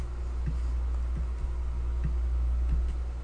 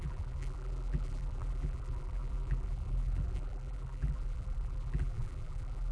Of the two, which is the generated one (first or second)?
second